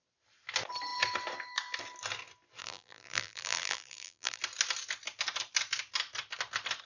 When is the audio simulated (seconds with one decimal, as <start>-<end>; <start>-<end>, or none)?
2.6-4.4